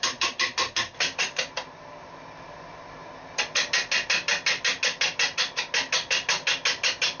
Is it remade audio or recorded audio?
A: recorded